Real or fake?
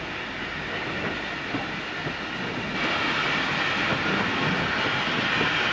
real